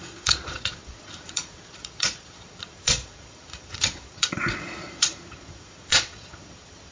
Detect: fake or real fake